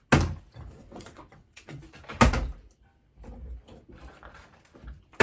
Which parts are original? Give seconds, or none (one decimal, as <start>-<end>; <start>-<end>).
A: 0.0-0.8; 1.8-5.2